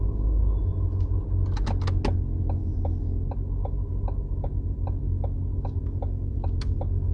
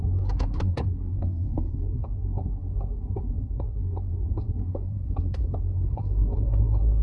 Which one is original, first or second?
first